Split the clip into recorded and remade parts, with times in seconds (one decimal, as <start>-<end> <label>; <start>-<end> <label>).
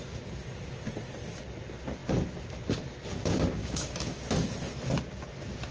0.0-3.6 recorded; 3.6-4.2 remade; 4.2-5.7 recorded